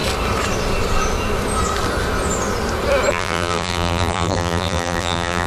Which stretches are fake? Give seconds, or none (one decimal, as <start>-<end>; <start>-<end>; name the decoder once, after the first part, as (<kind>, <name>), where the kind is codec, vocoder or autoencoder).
3.1-5.5 (vocoder, BigVGAN v2)